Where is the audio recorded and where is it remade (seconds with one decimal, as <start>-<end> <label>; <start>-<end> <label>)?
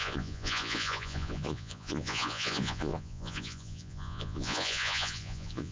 0.0-5.7 remade